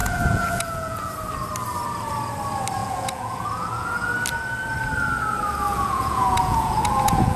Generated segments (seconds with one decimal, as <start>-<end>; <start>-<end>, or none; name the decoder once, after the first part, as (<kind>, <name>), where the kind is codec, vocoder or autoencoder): 0.0-1.1 (vocoder, Vocos); 2.8-4.1; 5.7-7.4